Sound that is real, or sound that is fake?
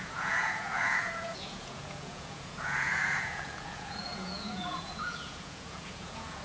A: fake